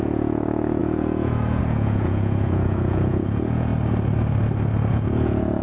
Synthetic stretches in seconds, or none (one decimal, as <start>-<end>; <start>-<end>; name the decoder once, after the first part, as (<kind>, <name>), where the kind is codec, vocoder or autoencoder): 0.0-3.7 (vocoder, Vocos); 4.9-5.6